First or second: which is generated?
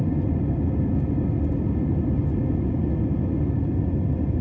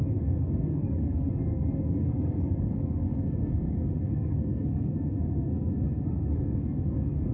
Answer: second